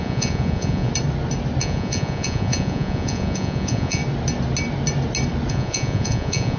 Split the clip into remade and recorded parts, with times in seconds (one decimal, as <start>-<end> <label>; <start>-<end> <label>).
0.0-0.9 remade; 0.9-1.6 recorded; 1.6-4.0 remade; 4.0-5.5 recorded; 5.5-6.6 remade